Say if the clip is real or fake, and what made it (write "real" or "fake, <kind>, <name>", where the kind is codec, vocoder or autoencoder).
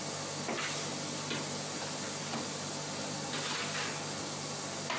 real